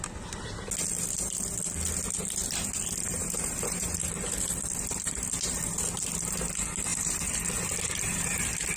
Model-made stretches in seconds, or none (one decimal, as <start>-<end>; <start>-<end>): 3.1-4.1; 6.9-7.4